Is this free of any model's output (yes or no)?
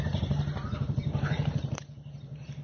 no